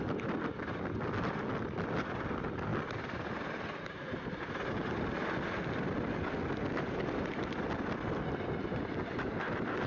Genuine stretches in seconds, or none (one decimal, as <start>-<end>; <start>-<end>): 0.0-9.9